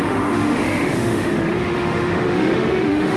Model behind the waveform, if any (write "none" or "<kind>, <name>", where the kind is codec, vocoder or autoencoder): autoencoder, DAC-VAE